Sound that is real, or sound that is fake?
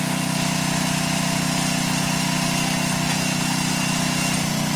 real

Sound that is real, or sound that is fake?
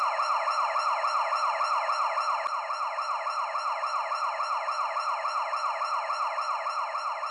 real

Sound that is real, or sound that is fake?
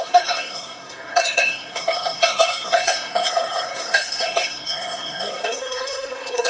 fake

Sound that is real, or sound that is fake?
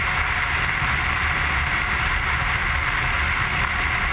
real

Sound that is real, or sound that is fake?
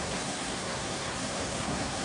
fake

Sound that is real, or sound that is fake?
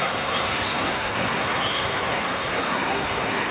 fake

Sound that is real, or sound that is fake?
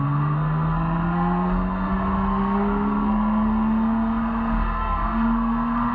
fake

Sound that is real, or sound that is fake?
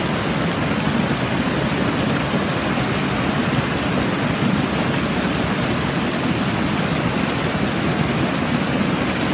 real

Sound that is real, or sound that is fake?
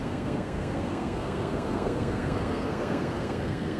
fake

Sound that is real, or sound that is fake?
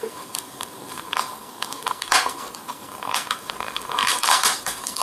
fake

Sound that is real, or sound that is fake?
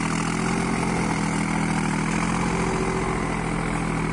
real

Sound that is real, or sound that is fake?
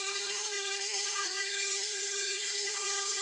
fake